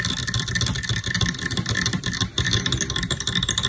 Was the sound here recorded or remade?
recorded